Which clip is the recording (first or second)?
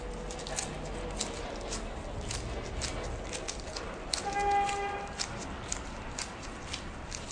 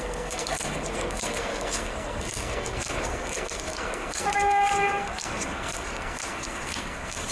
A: first